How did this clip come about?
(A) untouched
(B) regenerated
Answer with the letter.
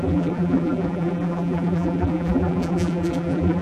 B